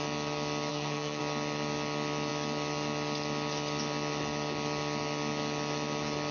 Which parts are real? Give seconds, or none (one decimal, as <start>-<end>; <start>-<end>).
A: 0.0-0.7; 1.2-6.3